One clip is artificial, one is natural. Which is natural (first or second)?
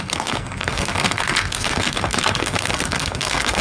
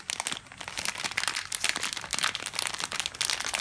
second